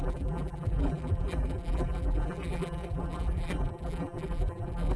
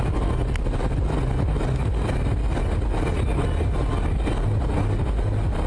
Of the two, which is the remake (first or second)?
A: first